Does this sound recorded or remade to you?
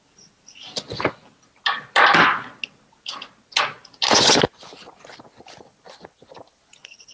recorded